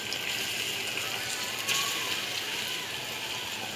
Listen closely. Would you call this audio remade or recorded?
recorded